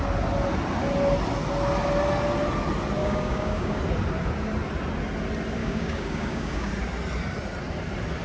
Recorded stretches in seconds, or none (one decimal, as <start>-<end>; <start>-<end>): 0.0-3.0; 3.8-5.6; 6.7-8.2